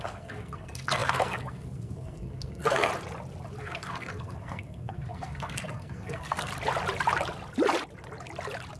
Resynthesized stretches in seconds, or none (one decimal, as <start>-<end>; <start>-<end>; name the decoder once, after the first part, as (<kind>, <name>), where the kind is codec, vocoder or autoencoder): 0.0-2.9 (codec, SNAC); 3.6-6.5